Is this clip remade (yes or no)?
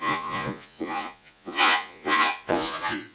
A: yes